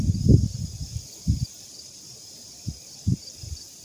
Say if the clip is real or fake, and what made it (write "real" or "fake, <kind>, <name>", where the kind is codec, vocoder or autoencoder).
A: real